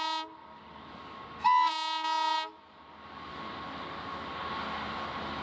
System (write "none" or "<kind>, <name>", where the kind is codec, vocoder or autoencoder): none